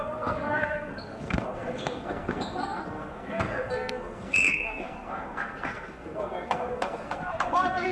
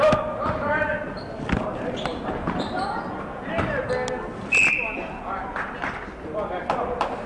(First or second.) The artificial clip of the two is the first